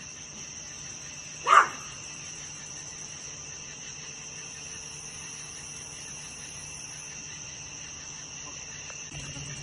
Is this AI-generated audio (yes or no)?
no